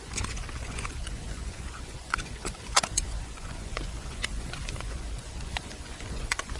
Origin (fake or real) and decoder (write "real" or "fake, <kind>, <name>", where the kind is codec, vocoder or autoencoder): fake, vocoder, Vocos